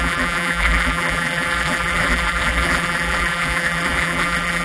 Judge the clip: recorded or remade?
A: remade